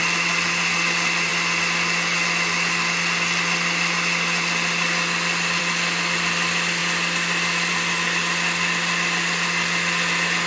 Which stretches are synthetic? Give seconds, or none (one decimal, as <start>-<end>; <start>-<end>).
none